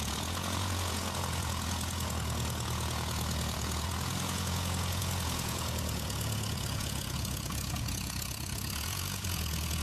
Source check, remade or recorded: remade